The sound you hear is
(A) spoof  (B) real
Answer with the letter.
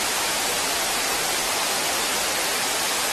A